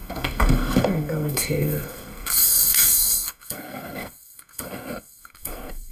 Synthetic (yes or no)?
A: yes